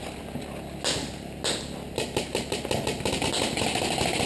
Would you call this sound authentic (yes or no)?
yes